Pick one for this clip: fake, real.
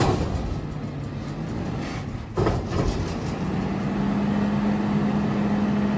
real